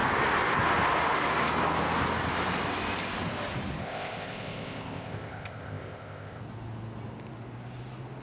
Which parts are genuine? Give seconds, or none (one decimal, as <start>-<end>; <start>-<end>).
0.0-3.8; 6.4-8.2